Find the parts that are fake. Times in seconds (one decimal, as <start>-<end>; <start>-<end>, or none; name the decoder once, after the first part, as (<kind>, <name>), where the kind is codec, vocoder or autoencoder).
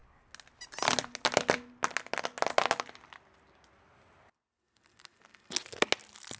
none